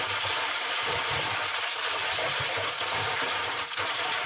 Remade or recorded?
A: remade